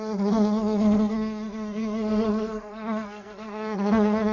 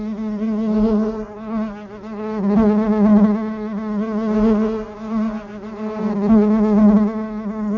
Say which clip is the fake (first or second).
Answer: first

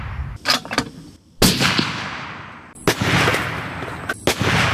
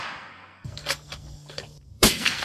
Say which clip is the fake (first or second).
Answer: second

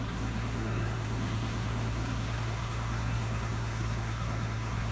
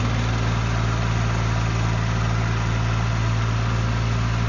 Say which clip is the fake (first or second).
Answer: first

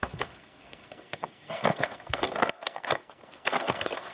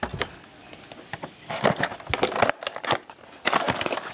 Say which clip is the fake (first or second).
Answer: first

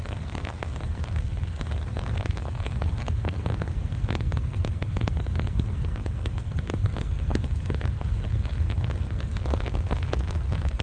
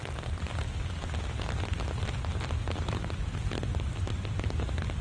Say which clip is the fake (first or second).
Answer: first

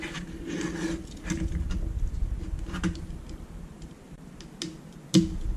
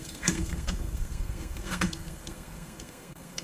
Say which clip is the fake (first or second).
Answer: second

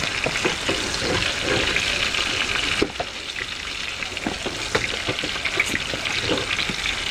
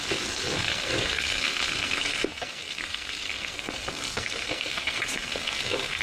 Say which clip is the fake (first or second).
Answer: second